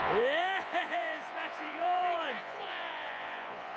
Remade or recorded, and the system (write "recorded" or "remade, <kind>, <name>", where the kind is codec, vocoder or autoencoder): remade, vocoder, Vocos